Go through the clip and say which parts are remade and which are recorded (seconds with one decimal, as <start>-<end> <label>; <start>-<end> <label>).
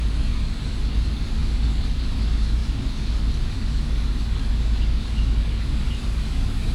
0.0-6.7 remade